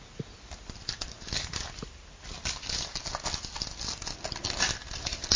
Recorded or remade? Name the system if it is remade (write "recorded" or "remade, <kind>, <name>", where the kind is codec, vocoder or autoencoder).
recorded